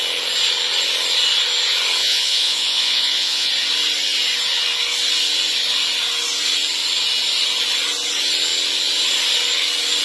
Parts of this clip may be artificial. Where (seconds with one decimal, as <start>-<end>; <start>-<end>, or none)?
2.0-3.5